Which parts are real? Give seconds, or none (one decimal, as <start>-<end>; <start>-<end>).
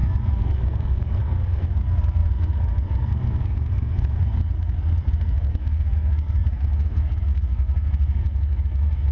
none